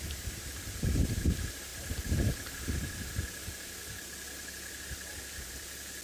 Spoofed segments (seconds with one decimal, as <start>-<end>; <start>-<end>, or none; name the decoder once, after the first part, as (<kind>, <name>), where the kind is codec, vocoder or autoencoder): 0.0-1.7 (vocoder, BigVGAN v2); 4.0-6.0